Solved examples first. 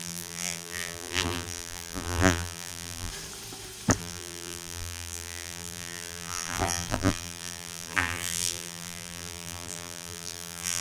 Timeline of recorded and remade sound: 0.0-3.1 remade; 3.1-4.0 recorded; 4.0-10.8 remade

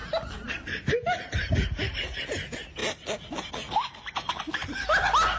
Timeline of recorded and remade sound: 0.0-5.4 recorded

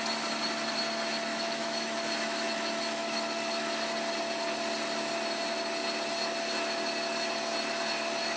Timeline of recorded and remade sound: 0.0-1.3 recorded; 1.3-3.8 remade; 3.8-8.4 recorded

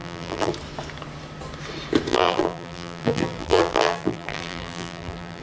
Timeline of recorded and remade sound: 0.0-0.5 remade; 0.5-2.1 recorded; 2.1-5.4 remade

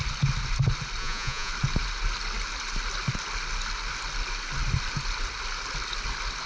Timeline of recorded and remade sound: 0.0-1.0 recorded; 1.0-1.5 remade; 1.5-6.5 recorded